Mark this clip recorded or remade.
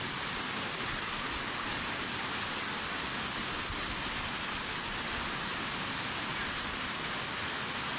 recorded